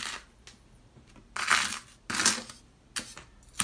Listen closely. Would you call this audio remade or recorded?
recorded